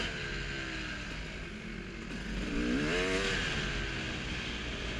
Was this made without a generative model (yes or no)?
yes